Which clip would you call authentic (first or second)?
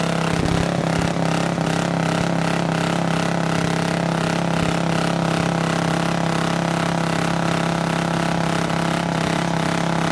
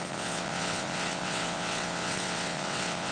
first